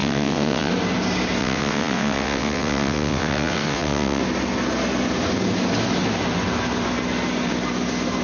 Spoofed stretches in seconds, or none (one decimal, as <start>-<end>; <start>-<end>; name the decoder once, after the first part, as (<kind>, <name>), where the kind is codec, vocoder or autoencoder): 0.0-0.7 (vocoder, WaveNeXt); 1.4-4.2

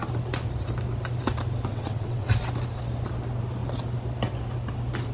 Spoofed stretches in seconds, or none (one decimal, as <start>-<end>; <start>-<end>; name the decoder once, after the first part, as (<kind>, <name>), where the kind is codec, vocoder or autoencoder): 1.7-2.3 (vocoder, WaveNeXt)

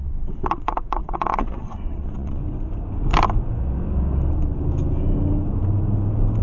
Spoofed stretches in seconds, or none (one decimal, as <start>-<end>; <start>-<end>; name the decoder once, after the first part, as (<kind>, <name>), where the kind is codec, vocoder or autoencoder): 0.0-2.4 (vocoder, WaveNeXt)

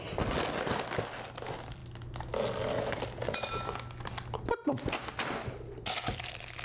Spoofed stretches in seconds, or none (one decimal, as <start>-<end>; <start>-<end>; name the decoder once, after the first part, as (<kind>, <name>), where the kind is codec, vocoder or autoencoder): none

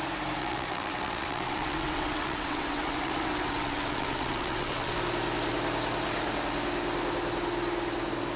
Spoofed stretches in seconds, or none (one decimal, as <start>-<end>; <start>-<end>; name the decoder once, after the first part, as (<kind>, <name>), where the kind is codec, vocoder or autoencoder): 0.4-4.9 (vocoder, WaveNeXt)